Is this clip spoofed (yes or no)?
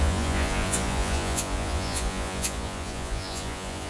yes